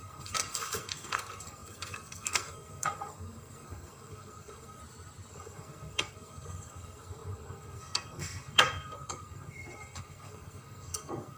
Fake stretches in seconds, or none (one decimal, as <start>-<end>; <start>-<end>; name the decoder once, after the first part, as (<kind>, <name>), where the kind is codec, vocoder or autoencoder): 0.0-4.8 (codec, SNAC); 5.3-11.4